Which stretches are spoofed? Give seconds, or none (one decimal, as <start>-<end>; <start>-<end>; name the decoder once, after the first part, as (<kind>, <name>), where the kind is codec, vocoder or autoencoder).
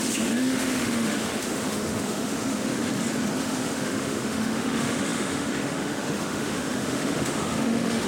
0.0-2.8 (autoencoder, DAC-VAE); 3.4-8.1